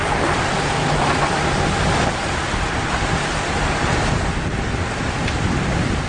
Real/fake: real